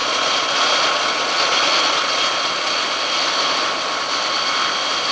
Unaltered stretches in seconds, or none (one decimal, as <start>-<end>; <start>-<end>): 2.8-5.1